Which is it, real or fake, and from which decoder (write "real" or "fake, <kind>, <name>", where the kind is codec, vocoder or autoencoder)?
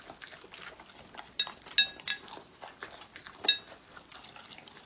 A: real